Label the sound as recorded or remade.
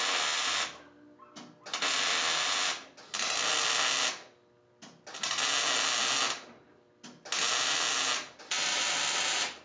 recorded